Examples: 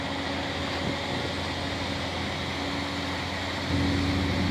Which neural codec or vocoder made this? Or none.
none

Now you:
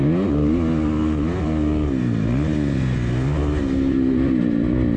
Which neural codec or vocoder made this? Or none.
none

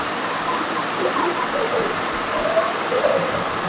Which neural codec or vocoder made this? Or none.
none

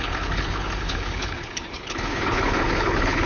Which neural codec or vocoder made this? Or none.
codec, HILCodec